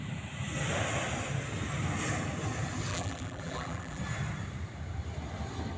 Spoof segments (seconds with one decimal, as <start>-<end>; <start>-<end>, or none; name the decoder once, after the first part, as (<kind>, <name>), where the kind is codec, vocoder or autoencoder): 2.9-4.0 (vocoder, BigVGAN v2)